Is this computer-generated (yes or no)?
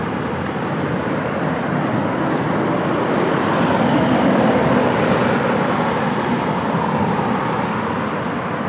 yes